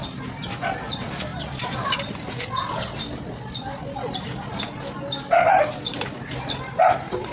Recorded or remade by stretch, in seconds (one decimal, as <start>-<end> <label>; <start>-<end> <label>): 0.0-7.3 recorded

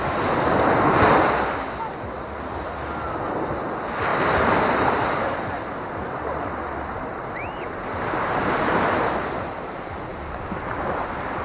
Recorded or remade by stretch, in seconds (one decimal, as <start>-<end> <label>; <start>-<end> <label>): 0.0-11.4 recorded

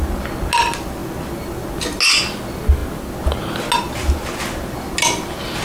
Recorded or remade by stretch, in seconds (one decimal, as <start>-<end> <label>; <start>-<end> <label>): 0.0-5.6 recorded

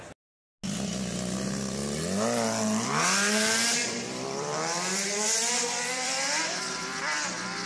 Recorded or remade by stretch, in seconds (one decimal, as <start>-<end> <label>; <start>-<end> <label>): 0.0-3.8 recorded; 3.8-7.0 remade; 7.0-7.7 recorded

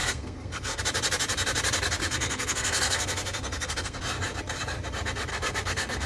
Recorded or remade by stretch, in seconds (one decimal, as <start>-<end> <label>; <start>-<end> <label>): 0.0-0.8 remade; 0.8-2.0 recorded; 2.0-4.0 remade; 4.0-5.3 recorded; 5.3-6.1 remade